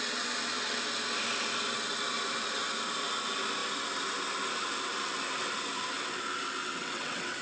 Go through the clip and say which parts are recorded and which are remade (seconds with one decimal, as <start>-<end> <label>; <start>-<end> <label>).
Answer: 0.0-6.6 recorded; 6.6-7.4 remade